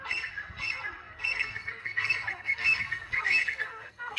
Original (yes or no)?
no